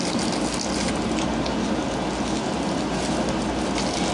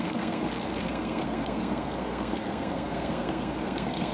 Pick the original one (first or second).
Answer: first